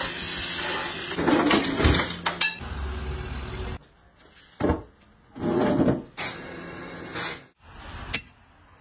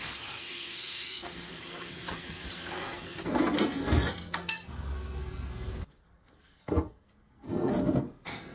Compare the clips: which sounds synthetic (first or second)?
second